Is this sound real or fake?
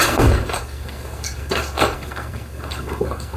fake